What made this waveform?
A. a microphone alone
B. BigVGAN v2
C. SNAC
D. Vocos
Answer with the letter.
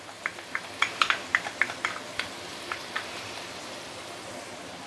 A